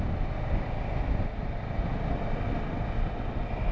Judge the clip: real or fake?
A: real